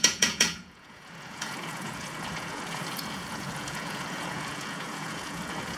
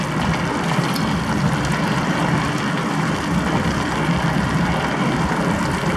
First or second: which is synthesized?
first